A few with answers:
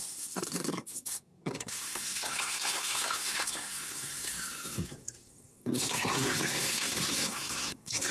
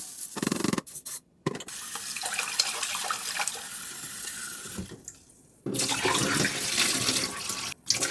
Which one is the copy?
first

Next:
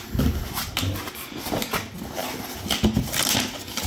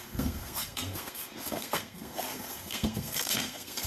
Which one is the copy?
second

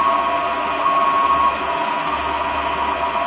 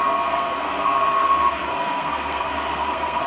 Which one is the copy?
second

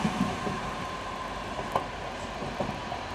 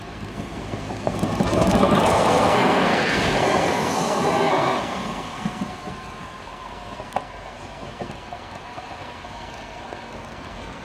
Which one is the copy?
second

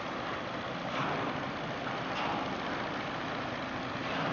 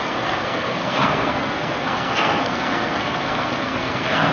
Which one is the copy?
second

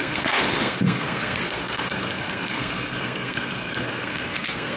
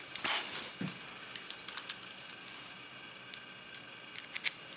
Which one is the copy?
first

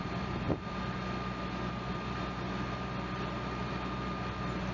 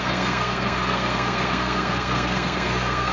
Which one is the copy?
second